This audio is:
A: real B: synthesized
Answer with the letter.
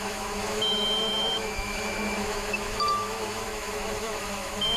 B